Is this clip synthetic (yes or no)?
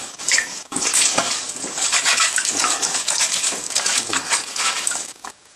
yes